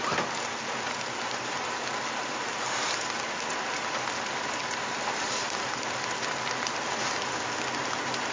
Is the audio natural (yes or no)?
yes